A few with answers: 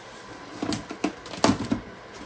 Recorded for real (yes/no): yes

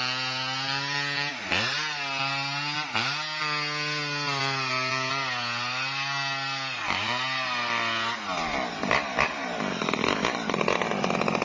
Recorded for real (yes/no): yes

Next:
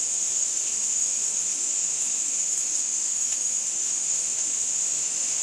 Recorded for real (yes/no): no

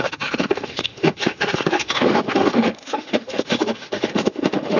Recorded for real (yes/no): no